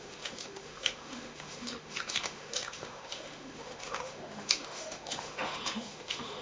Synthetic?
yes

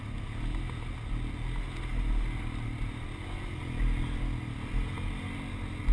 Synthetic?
no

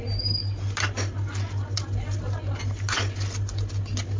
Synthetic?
no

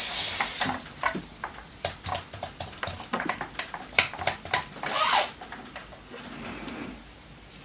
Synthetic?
yes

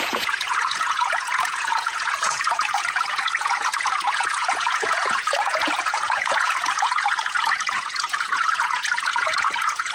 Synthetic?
yes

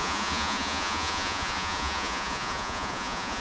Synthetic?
yes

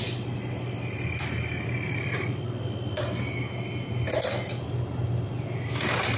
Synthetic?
no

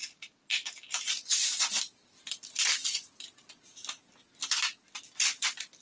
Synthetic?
no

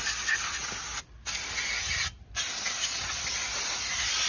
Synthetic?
no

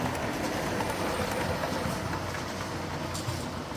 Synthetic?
no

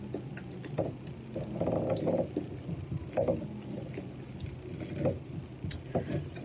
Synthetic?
no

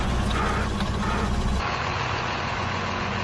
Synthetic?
yes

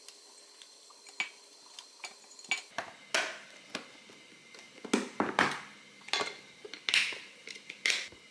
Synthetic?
no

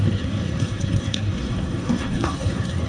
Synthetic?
yes